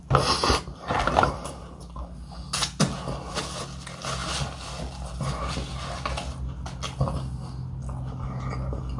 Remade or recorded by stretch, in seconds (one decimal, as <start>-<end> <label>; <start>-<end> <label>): 0.0-9.0 recorded